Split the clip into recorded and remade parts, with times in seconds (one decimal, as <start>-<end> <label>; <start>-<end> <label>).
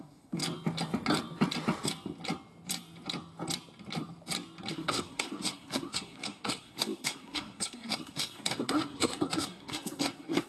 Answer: 0.0-0.4 remade; 0.4-4.7 recorded; 4.7-10.5 remade